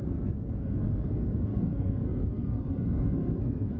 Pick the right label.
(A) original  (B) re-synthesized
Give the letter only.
B